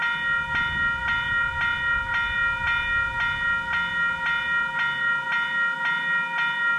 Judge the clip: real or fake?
real